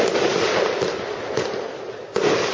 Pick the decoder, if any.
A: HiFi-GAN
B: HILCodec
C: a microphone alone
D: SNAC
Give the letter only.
C